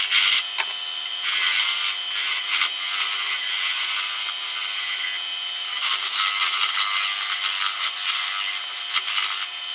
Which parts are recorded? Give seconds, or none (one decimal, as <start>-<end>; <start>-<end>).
0.0-5.7; 6.3-9.7